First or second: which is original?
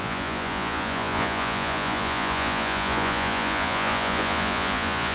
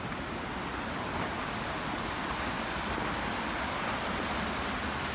second